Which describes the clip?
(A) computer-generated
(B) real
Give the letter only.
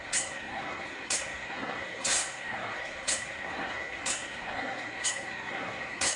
A